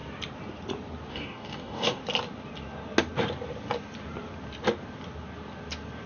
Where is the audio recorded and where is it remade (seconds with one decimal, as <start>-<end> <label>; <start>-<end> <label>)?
0.0-1.1 recorded; 1.1-2.0 remade; 2.0-6.1 recorded